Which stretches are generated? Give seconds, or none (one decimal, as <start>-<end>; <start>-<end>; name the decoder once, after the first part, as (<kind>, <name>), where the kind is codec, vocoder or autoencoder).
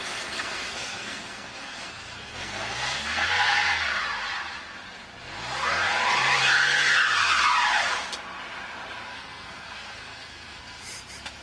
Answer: 0.0-4.0 (codec, SNAC); 9.1-10.8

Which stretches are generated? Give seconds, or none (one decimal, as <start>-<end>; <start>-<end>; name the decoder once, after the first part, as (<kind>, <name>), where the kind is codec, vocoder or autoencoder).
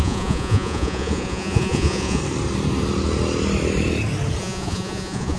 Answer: 0.0-2.2 (vocoder, Vocos); 4.4-5.4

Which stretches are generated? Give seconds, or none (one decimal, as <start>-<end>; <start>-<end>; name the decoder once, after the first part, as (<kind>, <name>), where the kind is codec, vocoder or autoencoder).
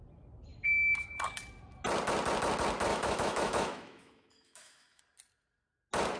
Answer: 2.9-5.0 (autoencoder, DAC-VAE)